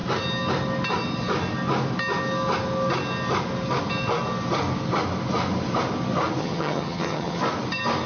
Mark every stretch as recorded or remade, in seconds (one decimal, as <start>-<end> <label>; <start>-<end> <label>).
0.0-6.4 recorded; 6.4-7.4 remade; 7.4-8.1 recorded